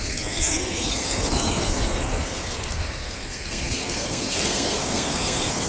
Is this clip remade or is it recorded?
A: remade